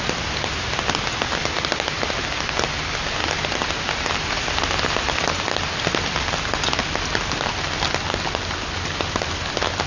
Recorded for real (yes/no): yes